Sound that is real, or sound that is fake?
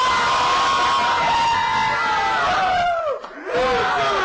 real